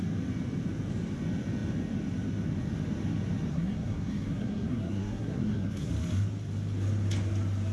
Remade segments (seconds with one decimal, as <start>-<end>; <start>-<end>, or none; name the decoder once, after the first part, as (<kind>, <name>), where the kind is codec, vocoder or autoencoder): 3.5-5.9 (codec, SNAC)

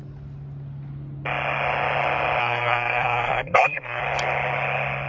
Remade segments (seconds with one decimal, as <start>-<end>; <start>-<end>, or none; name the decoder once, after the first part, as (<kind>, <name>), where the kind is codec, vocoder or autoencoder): 2.4-4.0 (codec, SNAC)

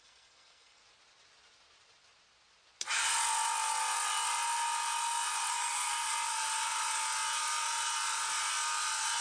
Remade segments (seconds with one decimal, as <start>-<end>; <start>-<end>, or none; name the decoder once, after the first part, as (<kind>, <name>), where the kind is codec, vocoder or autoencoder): 0.0-0.8 (codec, SNAC); 5.5-6.1

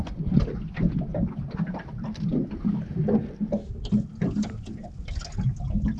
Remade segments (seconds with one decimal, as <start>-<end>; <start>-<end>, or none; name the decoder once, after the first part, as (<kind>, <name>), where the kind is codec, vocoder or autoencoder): none

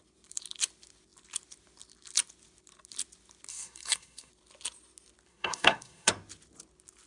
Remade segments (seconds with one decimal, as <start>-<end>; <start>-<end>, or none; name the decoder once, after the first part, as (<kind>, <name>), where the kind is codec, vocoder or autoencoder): 3.5-4.3 (codec, SNAC); 5.3-6.1

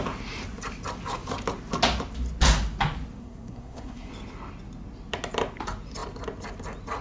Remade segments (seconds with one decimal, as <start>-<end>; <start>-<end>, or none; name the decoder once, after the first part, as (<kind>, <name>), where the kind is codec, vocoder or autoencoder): 3.2-4.1 (codec, SNAC)

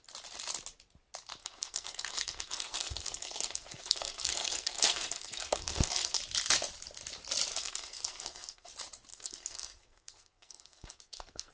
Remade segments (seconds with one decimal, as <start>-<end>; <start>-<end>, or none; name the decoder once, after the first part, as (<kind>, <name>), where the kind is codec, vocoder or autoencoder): 1.4-6.2 (codec, SNAC); 7.5-8.7; 9.1-11.5